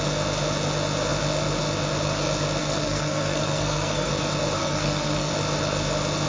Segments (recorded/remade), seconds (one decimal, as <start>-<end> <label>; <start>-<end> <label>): 0.0-2.6 recorded; 2.6-4.1 remade; 4.1-4.6 recorded; 4.6-5.3 remade; 5.3-6.3 recorded